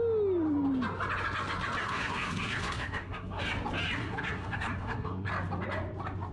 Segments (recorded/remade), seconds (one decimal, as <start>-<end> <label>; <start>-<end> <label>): 0.0-1.8 recorded; 1.8-3.4 remade; 3.4-4.0 recorded; 4.0-5.3 remade; 5.3-6.3 recorded